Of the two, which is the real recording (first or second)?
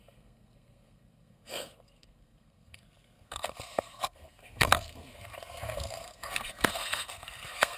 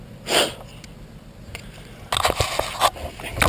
second